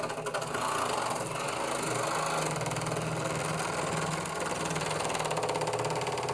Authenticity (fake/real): real